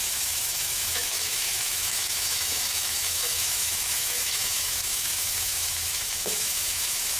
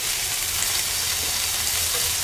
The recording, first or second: second